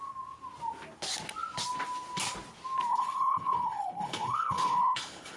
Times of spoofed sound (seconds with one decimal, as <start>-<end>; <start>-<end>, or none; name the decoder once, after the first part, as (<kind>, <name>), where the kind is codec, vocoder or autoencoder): 2.9-5.4 (codec, HILCodec)